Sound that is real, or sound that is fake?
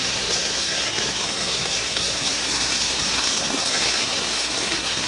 fake